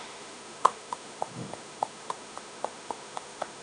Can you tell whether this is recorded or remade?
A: remade